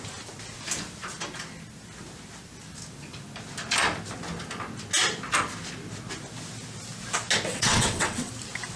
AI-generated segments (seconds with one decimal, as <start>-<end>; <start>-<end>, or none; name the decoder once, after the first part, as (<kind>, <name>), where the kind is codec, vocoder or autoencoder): 7.5-8.3 (vocoder, WaveNeXt)